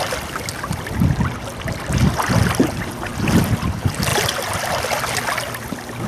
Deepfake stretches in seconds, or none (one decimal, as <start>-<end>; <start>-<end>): none